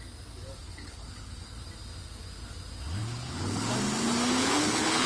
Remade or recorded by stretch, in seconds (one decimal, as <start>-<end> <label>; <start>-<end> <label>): 0.0-0.6 recorded; 0.6-1.5 remade; 1.5-3.0 recorded; 3.0-3.7 remade; 3.7-4.4 recorded; 4.4-5.1 remade